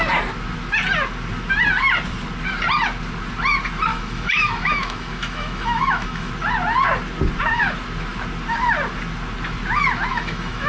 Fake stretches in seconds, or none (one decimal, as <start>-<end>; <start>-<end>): 3.9-6.3; 10.1-10.7